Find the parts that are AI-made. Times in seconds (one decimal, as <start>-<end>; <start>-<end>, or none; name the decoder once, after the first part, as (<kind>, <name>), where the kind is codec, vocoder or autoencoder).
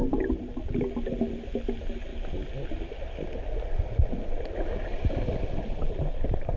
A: none